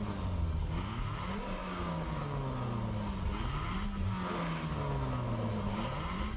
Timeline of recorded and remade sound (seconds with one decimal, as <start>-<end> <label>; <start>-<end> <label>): 0.0-1.6 recorded; 1.6-2.2 remade; 2.2-6.4 recorded